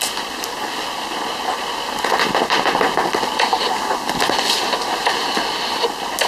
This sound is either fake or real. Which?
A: real